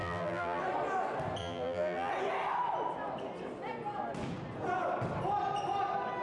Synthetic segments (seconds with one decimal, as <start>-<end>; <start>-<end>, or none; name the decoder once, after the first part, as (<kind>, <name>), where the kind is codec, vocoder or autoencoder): 0.0-0.6 (vocoder, BigVGAN v2); 1.4-2.1